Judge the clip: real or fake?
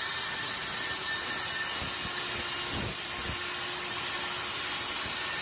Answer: real